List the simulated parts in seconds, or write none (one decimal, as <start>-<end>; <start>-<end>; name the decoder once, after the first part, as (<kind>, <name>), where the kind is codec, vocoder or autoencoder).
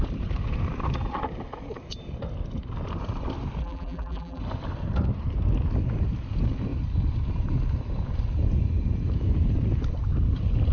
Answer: 3.6-4.4 (vocoder, BigVGAN v2)